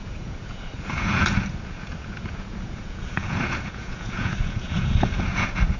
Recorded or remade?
remade